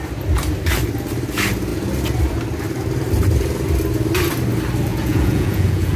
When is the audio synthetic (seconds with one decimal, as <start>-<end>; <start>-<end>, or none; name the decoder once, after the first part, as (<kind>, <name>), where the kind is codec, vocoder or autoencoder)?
4.9-6.0 (vocoder, Vocos)